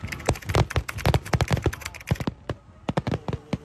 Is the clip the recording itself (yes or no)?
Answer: yes